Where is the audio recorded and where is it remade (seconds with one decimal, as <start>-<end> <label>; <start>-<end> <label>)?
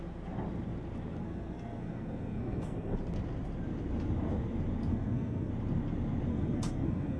0.0-1.2 recorded; 1.2-3.0 remade; 3.0-4.9 recorded; 4.9-5.5 remade; 5.5-6.3 recorded; 6.3-7.2 remade